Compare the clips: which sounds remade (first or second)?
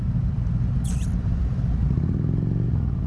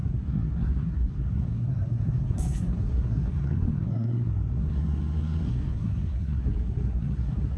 second